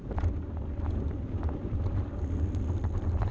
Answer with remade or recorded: recorded